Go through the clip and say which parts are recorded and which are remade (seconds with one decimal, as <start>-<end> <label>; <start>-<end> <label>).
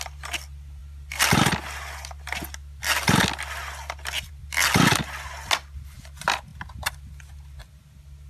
0.0-8.3 recorded